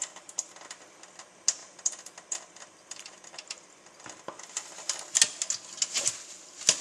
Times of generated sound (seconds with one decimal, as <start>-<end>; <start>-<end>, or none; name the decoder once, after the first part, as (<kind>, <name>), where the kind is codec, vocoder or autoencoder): 0.0-0.8 (vocoder, BigVGAN v2); 1.6-5.0